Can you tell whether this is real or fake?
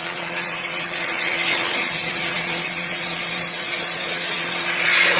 fake